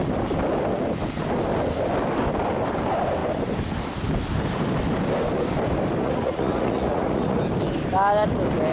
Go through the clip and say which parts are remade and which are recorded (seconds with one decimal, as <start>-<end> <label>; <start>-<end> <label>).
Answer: 0.0-6.0 recorded; 6.0-7.4 remade; 7.4-8.7 recorded